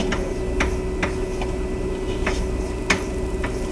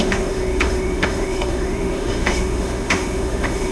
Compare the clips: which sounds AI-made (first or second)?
second